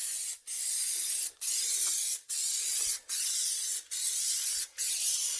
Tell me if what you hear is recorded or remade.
recorded